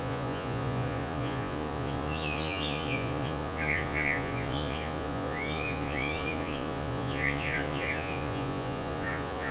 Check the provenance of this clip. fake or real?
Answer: fake